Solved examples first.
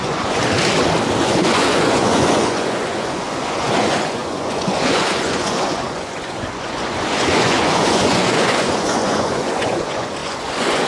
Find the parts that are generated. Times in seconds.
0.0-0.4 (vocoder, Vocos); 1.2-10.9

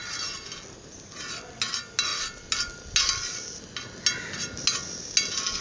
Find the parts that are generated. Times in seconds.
none

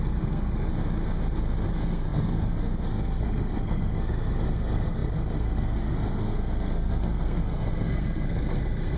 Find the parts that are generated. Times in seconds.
0.0-0.7 (codec, SNAC); 1.7-9.0

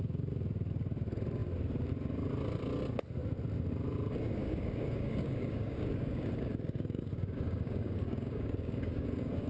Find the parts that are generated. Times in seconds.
4.4-9.5 (codec, DAC)